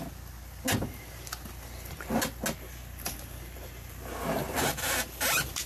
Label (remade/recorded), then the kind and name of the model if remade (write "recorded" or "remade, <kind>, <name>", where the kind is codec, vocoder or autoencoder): recorded